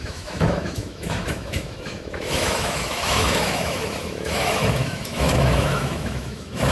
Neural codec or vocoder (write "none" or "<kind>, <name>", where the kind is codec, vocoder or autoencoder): autoencoder, DAC-VAE